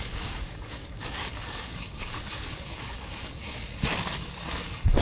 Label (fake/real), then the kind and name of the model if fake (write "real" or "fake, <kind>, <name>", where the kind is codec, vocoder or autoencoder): fake, codec, DAC